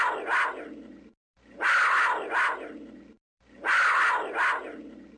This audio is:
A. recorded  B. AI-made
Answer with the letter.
B